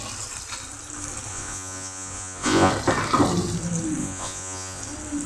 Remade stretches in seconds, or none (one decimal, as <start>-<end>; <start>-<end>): 1.3-2.7; 4.0-4.8